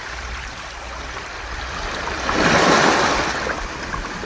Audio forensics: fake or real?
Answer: fake